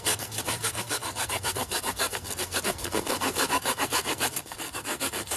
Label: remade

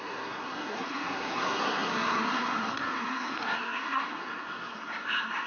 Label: remade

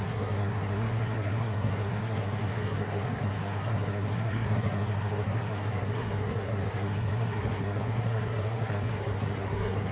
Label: remade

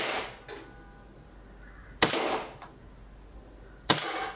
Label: recorded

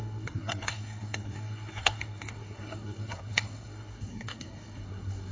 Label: remade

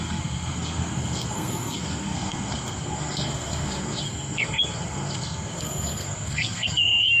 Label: remade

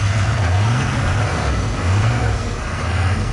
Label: remade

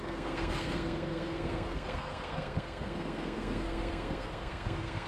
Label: remade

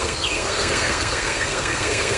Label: remade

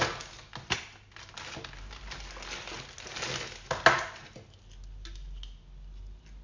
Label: recorded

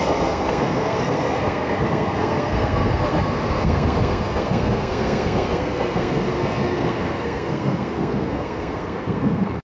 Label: remade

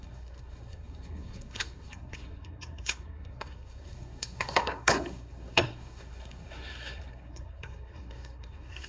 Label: remade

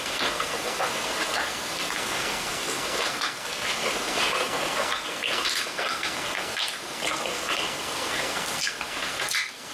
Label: remade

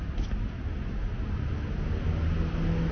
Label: recorded